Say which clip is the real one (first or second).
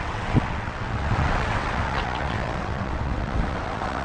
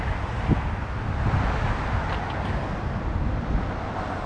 second